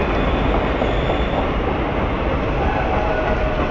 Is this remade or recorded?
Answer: recorded